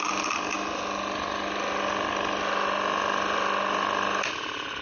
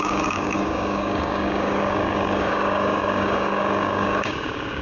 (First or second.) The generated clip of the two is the second